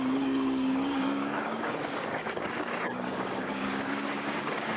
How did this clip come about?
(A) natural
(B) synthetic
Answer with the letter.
B